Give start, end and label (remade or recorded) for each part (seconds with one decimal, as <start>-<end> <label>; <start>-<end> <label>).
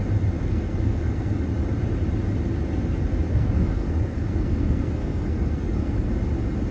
0.0-0.4 recorded; 0.4-1.3 remade; 1.3-3.3 recorded; 3.3-6.1 remade; 6.1-6.7 recorded